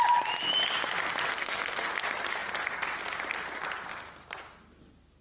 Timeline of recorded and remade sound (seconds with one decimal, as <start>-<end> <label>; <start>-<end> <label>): 0.0-1.4 recorded; 1.4-1.9 remade; 1.9-5.2 recorded